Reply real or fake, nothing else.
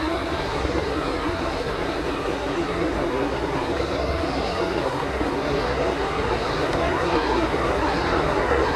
fake